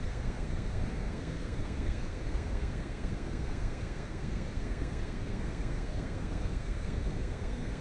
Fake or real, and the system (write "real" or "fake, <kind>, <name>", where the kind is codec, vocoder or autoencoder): fake, codec, SNAC